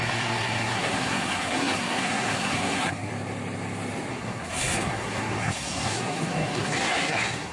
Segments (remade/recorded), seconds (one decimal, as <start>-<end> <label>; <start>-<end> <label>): 0.0-3.1 remade; 3.1-4.1 recorded; 4.1-7.5 remade